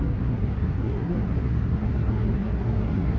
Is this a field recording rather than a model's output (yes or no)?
no